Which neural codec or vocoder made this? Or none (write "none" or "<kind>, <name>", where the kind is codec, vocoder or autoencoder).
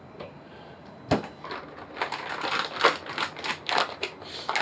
none